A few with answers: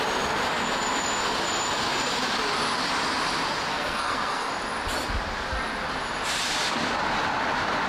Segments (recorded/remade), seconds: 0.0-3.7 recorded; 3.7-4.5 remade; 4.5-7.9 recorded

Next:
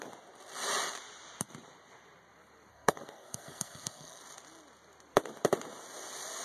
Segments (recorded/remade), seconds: 0.0-2.7 recorded; 2.7-4.2 remade; 4.2-6.4 recorded

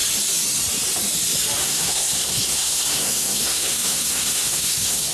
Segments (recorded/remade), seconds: 0.0-1.6 recorded; 1.6-5.1 remade

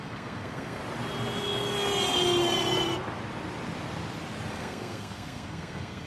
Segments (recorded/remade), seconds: 0.0-0.8 remade; 0.8-4.5 recorded; 4.5-6.1 remade

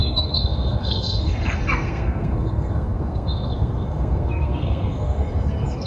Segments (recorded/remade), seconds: 0.0-5.9 remade

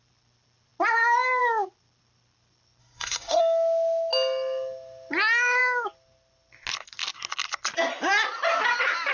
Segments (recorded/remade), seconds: 0.0-2.8 recorded; 2.8-3.4 remade; 3.4-9.1 recorded

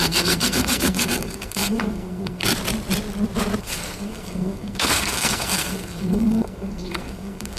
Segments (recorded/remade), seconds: 0.0-2.4 remade; 2.4-3.6 recorded; 3.6-7.6 remade